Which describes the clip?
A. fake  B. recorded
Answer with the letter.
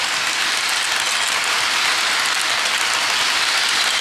B